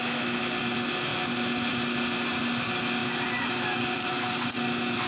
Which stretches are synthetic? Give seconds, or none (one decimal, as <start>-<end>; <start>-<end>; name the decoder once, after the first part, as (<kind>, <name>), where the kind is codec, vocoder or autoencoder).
none